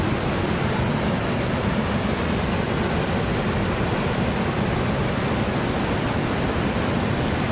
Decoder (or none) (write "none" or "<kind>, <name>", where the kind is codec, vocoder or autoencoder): none